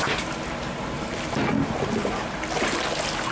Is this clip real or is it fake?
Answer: real